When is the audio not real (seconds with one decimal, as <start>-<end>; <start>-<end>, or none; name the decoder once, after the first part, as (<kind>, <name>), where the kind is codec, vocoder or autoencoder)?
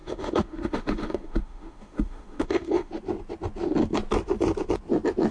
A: 0.0-2.9 (autoencoder, DAC-VAE)